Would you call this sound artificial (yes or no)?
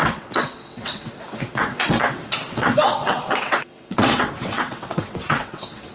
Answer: yes